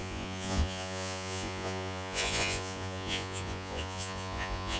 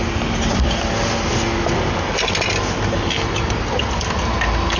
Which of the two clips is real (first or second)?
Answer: second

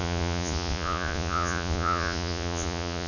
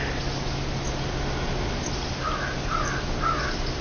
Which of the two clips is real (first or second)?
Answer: second